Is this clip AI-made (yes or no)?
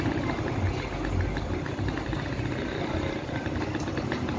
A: no